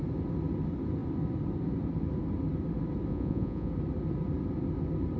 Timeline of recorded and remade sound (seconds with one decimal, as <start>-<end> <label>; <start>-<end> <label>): 0.0-3.1 recorded; 3.1-3.7 remade; 3.7-5.2 recorded